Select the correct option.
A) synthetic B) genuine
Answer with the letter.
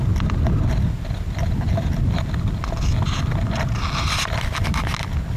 B